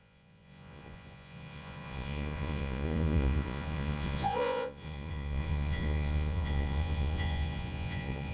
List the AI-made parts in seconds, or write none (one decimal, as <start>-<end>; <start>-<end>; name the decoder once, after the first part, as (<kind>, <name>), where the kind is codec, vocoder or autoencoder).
0.0-8.3 (vocoder, Vocos)